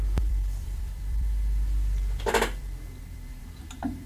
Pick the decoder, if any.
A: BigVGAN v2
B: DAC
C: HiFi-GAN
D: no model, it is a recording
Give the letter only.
A